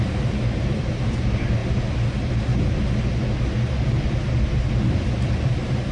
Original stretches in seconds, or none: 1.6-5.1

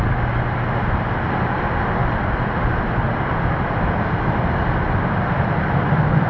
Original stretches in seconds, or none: 0.0-6.3

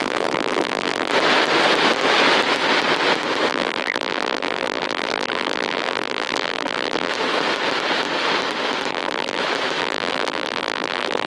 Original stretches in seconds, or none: 1.1-3.5; 7.1-8.9; 9.4-9.8

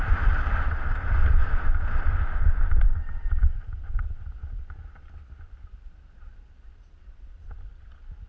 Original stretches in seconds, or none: 1.4-3.5

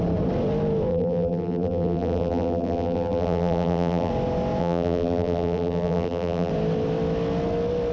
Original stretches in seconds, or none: 0.0-0.9; 4.1-4.6; 6.5-7.9